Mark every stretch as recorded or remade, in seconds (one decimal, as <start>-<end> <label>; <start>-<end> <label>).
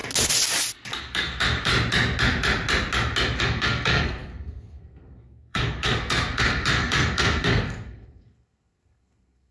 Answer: 0.0-1.0 recorded; 1.0-1.7 remade; 1.7-3.4 recorded; 3.4-9.5 remade